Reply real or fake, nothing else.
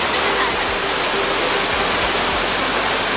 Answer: real